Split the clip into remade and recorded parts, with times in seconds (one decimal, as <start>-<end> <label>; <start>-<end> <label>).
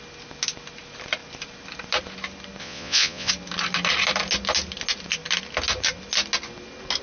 0.0-2.6 recorded; 2.6-3.3 remade; 3.3-7.0 recorded